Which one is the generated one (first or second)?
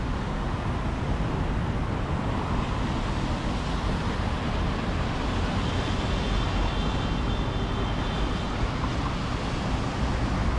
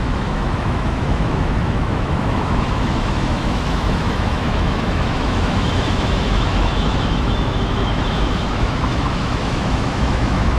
second